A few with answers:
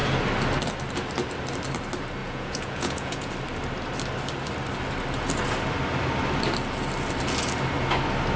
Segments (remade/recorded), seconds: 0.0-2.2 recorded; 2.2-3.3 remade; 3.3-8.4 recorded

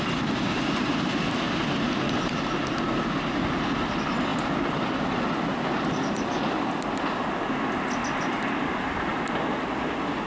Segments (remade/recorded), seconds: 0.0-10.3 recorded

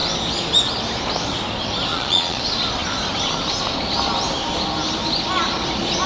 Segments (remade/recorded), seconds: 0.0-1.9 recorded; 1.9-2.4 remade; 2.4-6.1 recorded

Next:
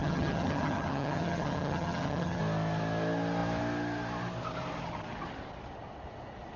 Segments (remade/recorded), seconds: 0.0-2.4 remade; 2.4-6.6 recorded

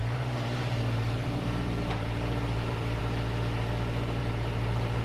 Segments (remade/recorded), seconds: 0.0-3.0 remade; 3.0-4.2 recorded; 4.2-5.0 remade

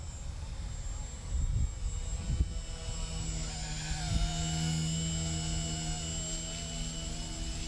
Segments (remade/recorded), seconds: 0.0-7.7 recorded